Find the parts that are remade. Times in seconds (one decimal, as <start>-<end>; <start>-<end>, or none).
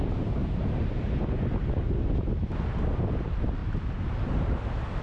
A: none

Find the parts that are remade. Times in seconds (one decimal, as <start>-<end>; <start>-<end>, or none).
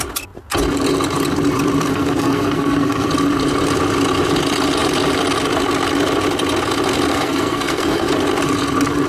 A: 1.9-3.1; 7.1-8.1